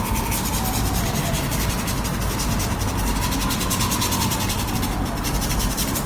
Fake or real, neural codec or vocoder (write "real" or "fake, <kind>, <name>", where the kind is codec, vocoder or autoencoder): real